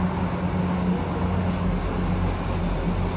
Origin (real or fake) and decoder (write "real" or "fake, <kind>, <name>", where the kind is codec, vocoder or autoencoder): real